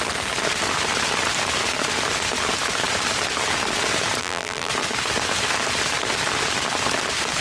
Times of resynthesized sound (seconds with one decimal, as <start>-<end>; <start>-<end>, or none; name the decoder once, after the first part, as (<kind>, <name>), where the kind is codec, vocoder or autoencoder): 4.2-4.7 (vocoder, BigVGAN v2)